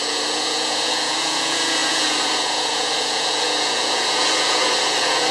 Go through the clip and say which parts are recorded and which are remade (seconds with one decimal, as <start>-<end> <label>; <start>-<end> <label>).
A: 0.0-5.3 remade

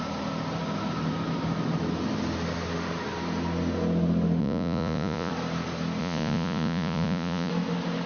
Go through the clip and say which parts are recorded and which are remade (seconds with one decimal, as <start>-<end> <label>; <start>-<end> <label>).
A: 0.0-4.4 recorded; 4.4-5.3 remade; 5.3-6.0 recorded; 6.0-7.5 remade; 7.5-8.1 recorded

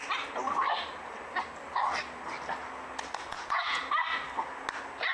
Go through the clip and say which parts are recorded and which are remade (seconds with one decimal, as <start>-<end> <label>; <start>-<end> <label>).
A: 0.0-3.3 recorded; 3.3-3.8 remade; 3.8-5.1 recorded

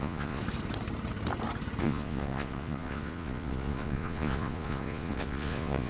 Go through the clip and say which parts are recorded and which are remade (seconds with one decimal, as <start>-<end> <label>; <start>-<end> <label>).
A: 0.0-0.4 remade; 0.4-1.8 recorded; 1.8-5.9 remade

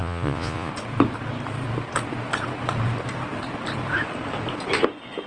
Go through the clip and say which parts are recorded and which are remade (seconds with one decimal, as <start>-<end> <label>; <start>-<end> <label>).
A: 0.0-0.7 remade; 0.7-5.3 recorded

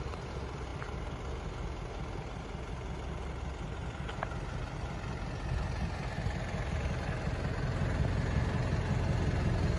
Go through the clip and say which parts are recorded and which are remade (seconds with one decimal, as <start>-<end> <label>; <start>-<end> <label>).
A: 0.0-9.8 recorded

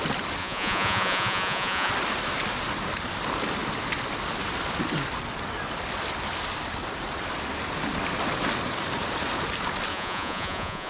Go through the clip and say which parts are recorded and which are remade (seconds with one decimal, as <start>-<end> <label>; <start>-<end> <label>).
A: 0.0-0.4 recorded; 0.4-1.9 remade; 1.9-9.9 recorded; 9.9-10.9 remade